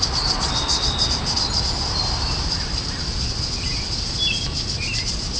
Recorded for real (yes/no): yes